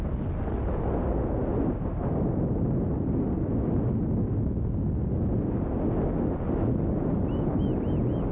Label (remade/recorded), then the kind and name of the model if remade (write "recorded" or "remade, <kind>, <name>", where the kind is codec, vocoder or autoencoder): recorded